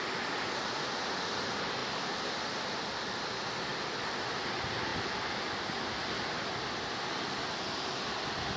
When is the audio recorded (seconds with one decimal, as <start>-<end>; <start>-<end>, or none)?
0.0-8.6